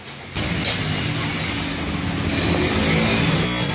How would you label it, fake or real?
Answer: real